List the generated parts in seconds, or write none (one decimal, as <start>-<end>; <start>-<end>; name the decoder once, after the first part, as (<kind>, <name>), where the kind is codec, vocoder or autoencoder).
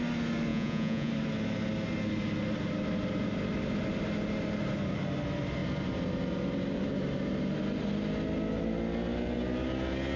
0.5-1.1 (vocoder, Vocos)